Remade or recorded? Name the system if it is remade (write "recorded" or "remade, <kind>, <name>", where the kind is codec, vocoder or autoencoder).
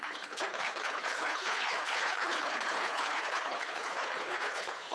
remade, codec, HILCodec